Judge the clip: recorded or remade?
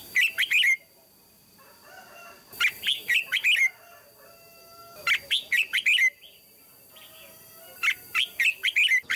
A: recorded